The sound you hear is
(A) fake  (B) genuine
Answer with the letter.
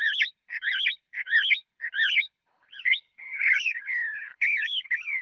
A